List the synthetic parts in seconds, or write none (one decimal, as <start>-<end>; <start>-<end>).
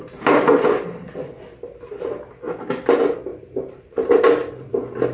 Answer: 3.3-4.2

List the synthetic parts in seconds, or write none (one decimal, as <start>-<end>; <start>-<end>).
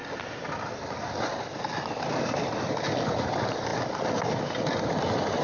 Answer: 3.7-5.4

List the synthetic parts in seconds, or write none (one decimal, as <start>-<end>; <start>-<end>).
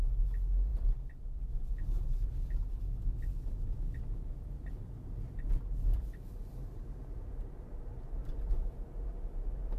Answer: 5.9-9.8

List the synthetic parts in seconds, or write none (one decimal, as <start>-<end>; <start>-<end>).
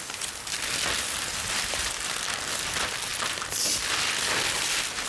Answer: 1.3-1.9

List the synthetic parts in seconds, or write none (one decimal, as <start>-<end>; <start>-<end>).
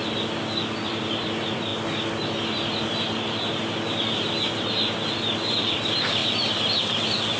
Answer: 0.0-1.7; 5.4-6.2; 6.8-7.4